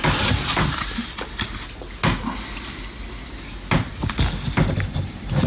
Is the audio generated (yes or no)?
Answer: no